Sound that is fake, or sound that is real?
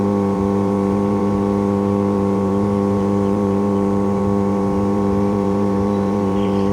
fake